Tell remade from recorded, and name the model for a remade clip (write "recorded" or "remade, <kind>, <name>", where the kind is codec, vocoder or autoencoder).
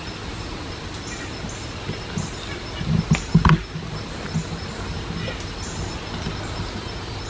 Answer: recorded